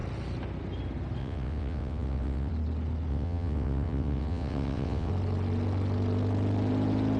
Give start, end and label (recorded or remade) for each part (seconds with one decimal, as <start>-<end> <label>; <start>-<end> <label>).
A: 0.0-1.2 recorded; 1.2-2.5 remade; 2.5-3.1 recorded; 3.1-5.1 remade; 5.1-7.2 recorded